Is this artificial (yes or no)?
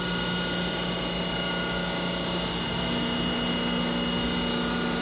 no